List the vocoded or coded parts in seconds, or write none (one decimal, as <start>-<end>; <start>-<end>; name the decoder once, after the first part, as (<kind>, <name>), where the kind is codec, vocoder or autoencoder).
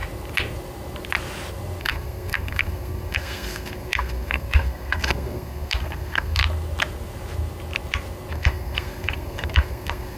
1.8-6.4 (codec, SNAC); 8.3-10.2